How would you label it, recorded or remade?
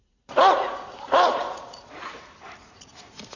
remade